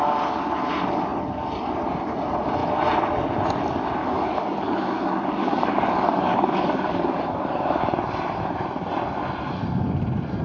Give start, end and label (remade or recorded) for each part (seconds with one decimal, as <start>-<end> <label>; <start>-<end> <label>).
0.0-4.0 recorded; 4.0-7.8 remade; 7.8-10.4 recorded